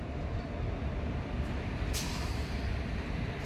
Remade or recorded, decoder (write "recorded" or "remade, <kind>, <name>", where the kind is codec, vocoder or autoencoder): recorded